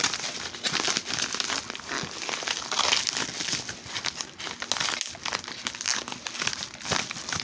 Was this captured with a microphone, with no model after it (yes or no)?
yes